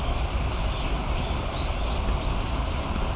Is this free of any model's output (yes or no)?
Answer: yes